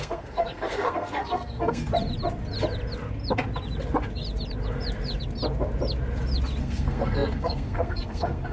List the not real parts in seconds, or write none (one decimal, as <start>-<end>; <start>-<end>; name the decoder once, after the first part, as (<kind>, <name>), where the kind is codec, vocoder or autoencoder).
0.0-1.9 (codec, SNAC); 6.6-8.5